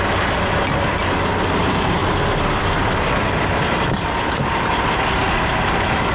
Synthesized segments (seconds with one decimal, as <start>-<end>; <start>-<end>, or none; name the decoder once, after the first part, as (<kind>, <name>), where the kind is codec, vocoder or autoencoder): none